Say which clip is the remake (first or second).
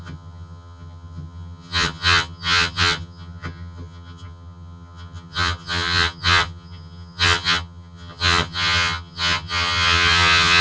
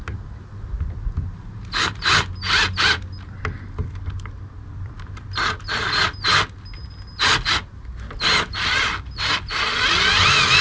first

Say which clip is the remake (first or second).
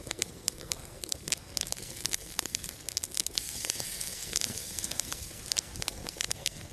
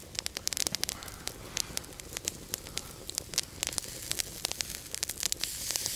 first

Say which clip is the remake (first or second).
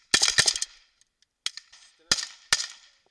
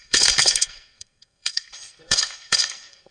second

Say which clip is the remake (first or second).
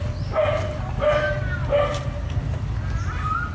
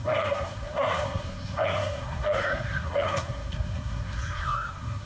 second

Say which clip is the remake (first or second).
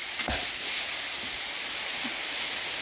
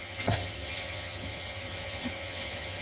second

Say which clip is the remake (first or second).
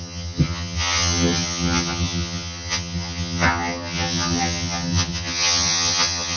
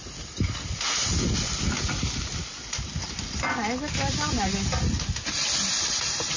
first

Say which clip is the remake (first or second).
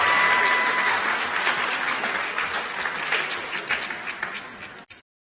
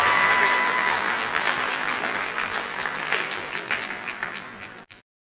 second